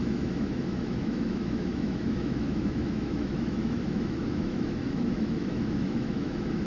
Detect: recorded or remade remade